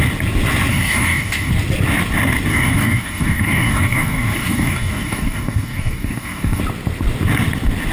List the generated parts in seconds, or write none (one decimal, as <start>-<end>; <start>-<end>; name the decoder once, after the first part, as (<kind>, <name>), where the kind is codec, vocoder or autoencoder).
0.7-1.5 (codec, DAC); 2.5-6.6

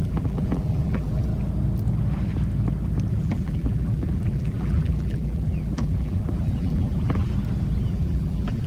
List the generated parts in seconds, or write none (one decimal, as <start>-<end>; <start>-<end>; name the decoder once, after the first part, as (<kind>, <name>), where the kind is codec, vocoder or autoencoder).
0.0-1.3 (vocoder, BigVGAN v2); 3.1-7.3; 7.8-8.7

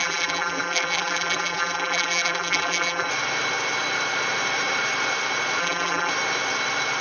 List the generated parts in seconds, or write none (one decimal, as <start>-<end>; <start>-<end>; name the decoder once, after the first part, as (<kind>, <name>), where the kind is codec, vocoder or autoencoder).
0.0-3.1 (vocoder, BigVGAN v2); 5.6-6.1

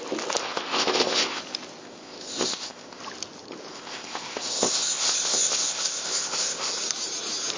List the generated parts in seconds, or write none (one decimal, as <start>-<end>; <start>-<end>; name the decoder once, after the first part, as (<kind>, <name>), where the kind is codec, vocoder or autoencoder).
0.4-1.4 (codec, ZipCodec); 1.8-3.0; 3.7-6.7